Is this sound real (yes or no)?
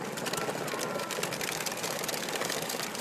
yes